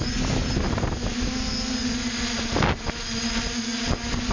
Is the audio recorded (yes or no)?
yes